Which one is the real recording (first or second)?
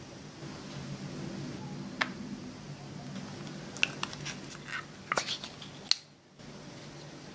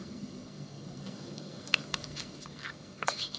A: first